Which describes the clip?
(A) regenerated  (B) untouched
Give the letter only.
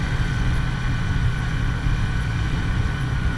A